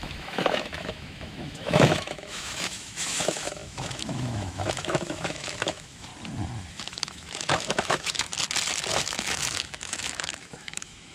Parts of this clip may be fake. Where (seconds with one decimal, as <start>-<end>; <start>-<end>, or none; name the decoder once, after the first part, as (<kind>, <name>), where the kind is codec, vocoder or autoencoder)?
0.0-6.1 (autoencoder, DAC-VAE); 6.7-8.3; 8.9-11.1